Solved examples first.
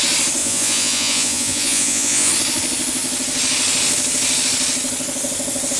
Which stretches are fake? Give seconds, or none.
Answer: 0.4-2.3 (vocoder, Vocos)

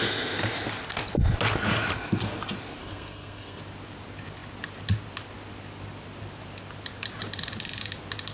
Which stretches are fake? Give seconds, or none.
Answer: 2.8-3.6 (codec, SNAC)